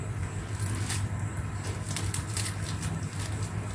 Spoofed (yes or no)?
no